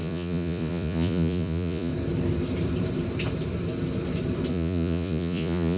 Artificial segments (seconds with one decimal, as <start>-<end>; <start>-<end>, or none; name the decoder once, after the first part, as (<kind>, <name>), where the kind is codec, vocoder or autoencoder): 0.0-1.9 (vocoder, Vocos); 4.5-5.8